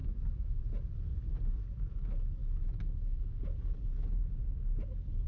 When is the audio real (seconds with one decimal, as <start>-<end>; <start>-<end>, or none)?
0.6-2.4; 3.4-5.3